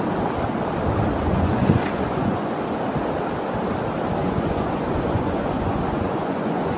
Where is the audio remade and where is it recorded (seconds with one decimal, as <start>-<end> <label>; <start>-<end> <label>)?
0.0-1.2 recorded; 1.2-2.6 remade; 2.6-4.2 recorded; 4.2-6.8 remade